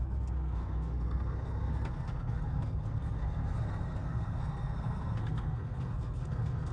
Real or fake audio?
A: fake